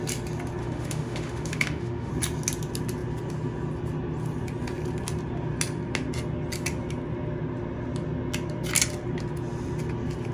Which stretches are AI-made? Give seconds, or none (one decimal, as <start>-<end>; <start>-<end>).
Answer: 0.6-2.1